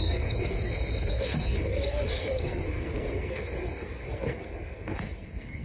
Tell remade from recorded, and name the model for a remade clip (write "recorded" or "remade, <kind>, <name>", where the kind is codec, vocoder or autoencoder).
remade, codec, SNAC